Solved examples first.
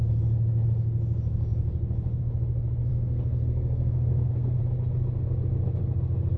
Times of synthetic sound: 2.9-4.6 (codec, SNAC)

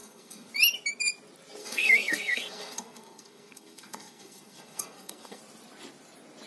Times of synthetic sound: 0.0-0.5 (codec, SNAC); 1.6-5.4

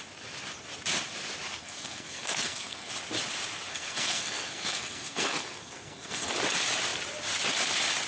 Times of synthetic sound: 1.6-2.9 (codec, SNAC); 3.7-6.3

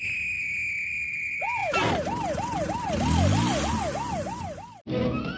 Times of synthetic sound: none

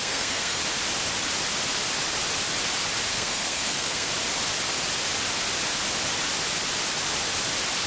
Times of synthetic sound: 0.0-0.6 (codec, SNAC); 3.1-4.1

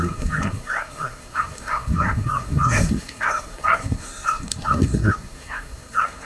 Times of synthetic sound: 0.0-6.2 (codec, SNAC)

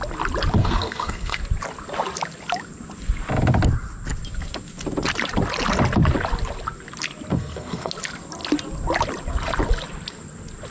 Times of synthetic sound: 0.6-1.4 (codec, SNAC); 7.3-7.9